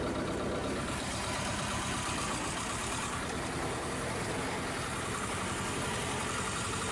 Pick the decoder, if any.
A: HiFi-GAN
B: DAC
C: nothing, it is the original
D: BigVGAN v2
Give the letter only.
D